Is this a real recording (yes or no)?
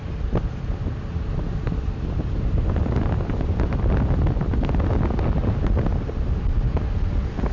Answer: yes